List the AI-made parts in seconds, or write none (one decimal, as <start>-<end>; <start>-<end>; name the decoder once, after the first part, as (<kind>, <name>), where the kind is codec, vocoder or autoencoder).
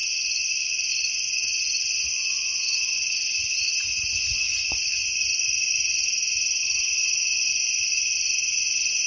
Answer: 0.0-0.5 (vocoder, Vocos); 0.9-5.7; 7.0-8.3